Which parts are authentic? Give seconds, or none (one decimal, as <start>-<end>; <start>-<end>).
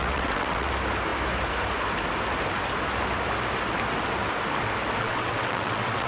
0.7-5.0